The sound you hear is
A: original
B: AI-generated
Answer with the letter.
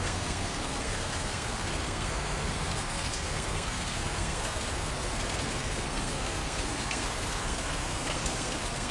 B